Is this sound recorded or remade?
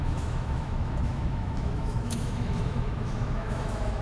remade